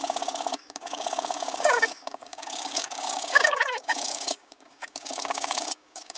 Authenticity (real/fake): fake